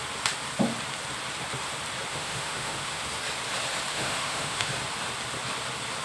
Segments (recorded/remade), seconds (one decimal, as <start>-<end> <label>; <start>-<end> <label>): 0.0-2.1 recorded; 2.1-3.0 remade; 3.0-3.9 recorded; 3.9-4.7 remade; 4.7-6.0 recorded